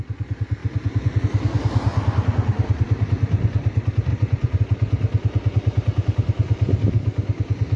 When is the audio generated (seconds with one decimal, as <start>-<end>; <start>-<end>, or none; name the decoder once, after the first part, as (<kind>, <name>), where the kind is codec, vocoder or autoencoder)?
4.1-4.6 (vocoder, Vocos)